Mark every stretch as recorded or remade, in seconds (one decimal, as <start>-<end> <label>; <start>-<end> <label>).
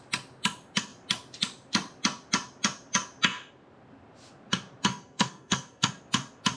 0.0-4.9 recorded; 4.9-5.9 remade; 5.9-6.6 recorded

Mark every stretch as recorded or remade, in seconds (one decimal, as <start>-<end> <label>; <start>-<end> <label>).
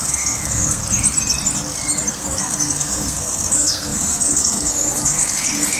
0.0-0.8 remade; 0.8-2.1 recorded; 2.1-5.8 remade